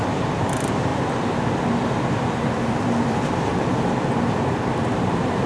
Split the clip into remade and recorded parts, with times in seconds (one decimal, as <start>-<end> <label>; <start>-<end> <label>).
0.0-0.9 remade; 0.9-2.1 recorded; 2.1-5.5 remade